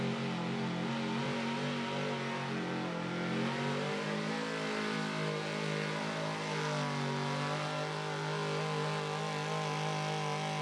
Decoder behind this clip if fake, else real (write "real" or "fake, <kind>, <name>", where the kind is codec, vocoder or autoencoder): real